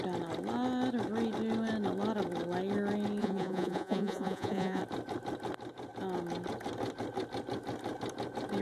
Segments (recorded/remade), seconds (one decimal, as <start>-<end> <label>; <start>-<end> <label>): 0.0-3.2 recorded; 3.2-4.8 remade; 4.8-8.6 recorded